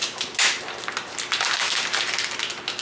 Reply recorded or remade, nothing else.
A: recorded